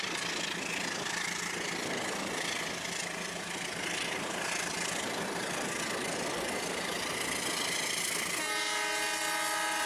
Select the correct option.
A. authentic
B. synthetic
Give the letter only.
A